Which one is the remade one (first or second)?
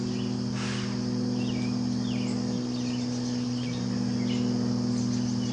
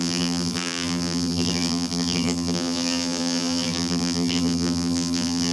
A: second